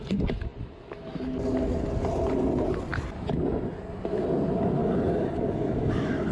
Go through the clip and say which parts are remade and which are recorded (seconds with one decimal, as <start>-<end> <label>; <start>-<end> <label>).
0.0-4.8 recorded; 4.8-6.3 remade